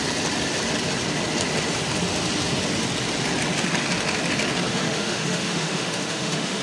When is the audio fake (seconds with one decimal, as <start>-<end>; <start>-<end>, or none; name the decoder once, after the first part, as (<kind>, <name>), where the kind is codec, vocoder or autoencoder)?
4.7-6.6 (autoencoder, DAC-VAE)

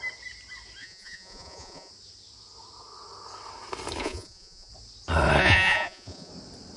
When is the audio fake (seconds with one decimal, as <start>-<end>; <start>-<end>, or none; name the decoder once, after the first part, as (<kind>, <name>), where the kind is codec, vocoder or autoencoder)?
0.8-1.9 (vocoder, Vocos); 4.0-4.7; 5.4-6.3